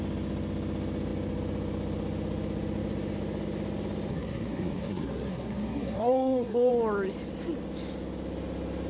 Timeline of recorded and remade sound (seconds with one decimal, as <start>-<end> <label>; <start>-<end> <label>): 0.0-4.1 recorded; 4.1-6.7 remade; 6.7-8.9 recorded